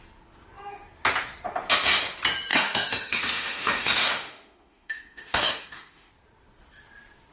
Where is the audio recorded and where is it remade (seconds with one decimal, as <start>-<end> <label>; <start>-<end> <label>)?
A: 0.0-2.5 recorded; 2.5-6.1 remade; 6.1-7.3 recorded